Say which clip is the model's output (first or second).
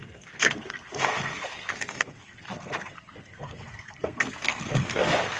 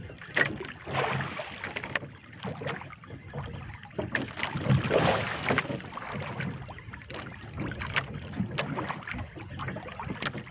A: first